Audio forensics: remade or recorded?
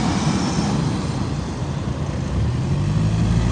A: recorded